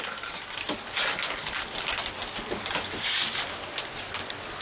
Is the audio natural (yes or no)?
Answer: yes